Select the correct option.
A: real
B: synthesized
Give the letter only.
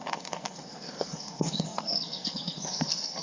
B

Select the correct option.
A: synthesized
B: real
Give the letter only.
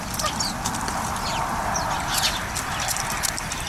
B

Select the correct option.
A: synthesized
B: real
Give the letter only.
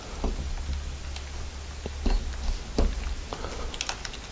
B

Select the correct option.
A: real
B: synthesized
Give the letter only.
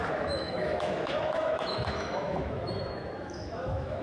B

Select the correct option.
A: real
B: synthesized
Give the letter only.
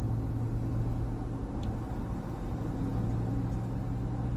A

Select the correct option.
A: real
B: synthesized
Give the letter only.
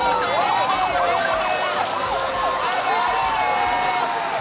A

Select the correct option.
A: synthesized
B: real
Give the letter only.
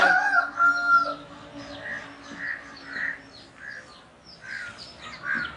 B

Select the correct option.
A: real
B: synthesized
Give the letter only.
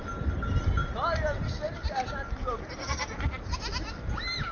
A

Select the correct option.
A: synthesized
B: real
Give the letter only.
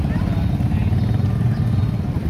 B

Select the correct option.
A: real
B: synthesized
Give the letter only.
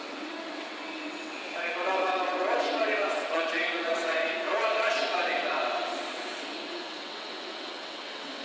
B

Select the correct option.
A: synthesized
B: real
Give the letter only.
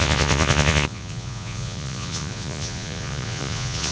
A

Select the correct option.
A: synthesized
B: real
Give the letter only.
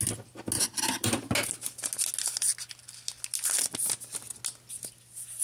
B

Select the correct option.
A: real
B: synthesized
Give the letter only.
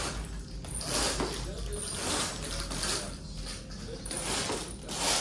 A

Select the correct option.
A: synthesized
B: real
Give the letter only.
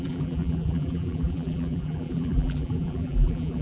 A